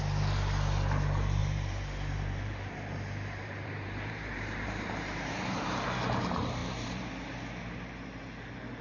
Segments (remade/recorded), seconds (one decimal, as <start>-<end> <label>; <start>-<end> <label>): 0.0-1.4 recorded; 1.4-5.9 remade; 5.9-6.6 recorded; 6.6-7.1 remade; 7.1-8.8 recorded